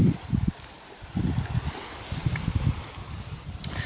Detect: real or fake fake